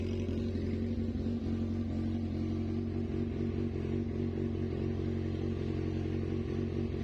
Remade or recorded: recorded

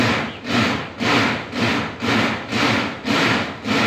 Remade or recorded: recorded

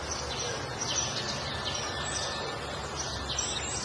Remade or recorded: recorded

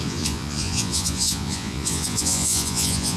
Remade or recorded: remade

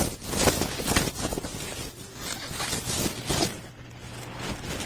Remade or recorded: recorded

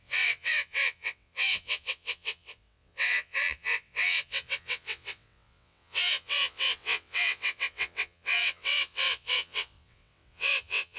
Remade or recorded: remade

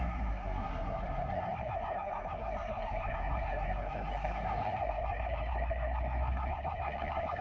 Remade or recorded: remade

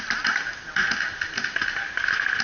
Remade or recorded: recorded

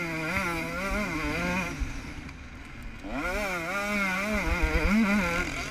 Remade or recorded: recorded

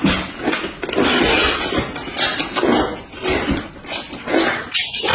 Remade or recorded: recorded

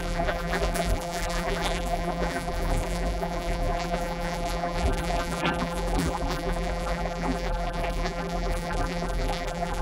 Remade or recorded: remade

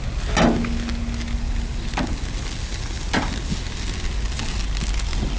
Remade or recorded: recorded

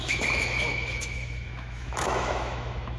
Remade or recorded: remade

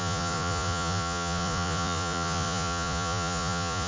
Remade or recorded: remade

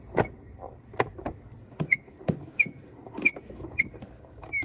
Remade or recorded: recorded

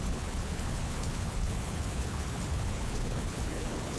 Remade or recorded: remade